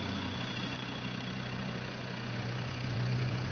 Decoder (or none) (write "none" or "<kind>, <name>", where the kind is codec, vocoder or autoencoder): vocoder, Vocos